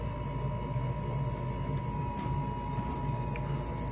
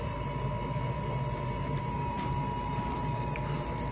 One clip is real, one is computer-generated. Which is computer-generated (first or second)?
second